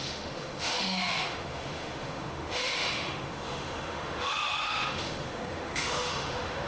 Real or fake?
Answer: fake